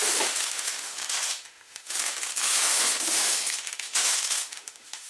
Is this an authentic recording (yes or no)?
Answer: no